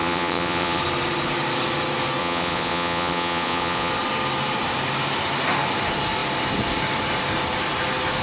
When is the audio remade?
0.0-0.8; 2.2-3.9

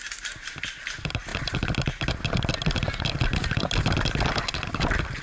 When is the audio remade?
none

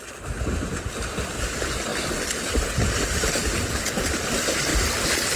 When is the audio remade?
none

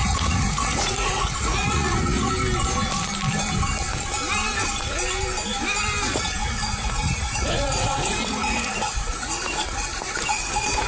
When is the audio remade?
0.0-2.3; 6.4-10.9